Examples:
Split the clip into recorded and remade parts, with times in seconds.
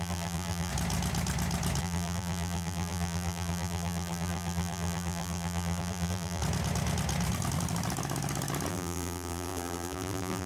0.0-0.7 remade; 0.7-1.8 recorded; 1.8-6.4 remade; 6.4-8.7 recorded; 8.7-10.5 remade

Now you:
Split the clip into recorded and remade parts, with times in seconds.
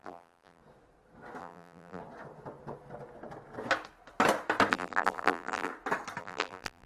0.0-0.6 remade; 0.6-1.4 recorded; 1.4-2.0 remade; 2.0-4.7 recorded; 4.7-5.7 remade; 5.7-6.2 recorded; 6.2-6.9 remade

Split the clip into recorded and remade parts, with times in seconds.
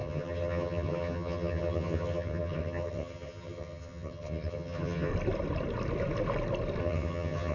0.0-5.1 remade; 5.1-6.8 recorded; 6.8-7.5 remade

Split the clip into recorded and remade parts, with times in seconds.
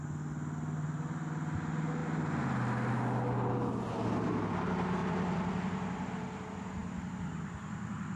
0.0-5.0 recorded; 5.0-6.1 remade; 6.1-8.2 recorded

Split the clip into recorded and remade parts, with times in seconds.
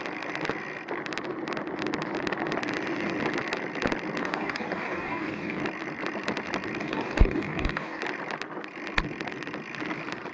0.0-4.2 recorded; 4.2-5.6 remade; 5.6-6.8 recorded; 6.8-8.0 remade; 8.0-10.3 recorded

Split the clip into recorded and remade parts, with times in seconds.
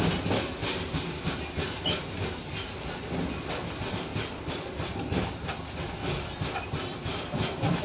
0.0-7.8 recorded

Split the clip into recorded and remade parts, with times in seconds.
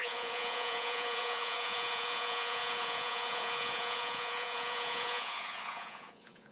0.0-6.5 remade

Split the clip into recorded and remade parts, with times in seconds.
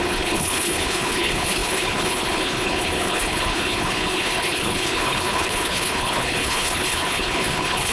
0.0-7.9 remade